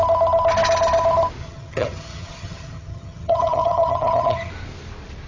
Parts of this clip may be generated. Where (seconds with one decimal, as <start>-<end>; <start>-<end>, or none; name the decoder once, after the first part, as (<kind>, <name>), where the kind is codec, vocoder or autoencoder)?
1.4-4.5 (vocoder, HiFi-GAN)